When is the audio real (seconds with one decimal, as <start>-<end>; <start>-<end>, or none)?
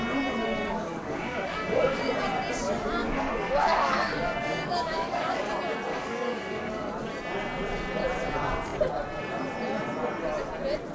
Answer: 0.0-0.4; 2.1-3.0; 5.5-5.9; 6.9-10.9